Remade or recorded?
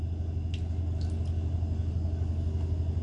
recorded